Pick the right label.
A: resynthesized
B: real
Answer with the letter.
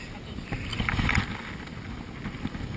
B